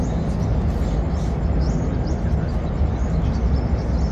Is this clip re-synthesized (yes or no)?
no